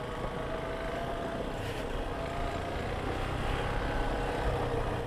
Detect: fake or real real